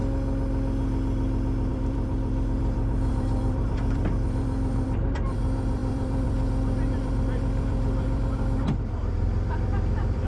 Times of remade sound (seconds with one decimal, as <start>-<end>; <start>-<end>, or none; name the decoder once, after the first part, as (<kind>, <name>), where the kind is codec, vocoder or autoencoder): 1.7-10.3 (vocoder, BigVGAN v2)